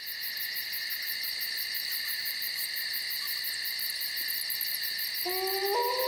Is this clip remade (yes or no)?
no